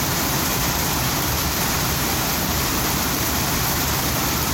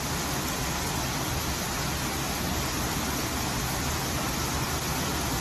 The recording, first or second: second